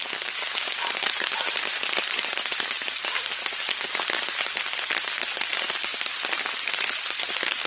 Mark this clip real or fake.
real